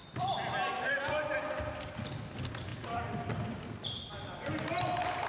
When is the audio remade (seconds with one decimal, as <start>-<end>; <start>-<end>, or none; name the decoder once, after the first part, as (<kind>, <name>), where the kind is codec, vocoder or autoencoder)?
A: none